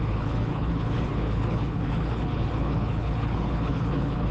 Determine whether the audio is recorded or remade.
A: remade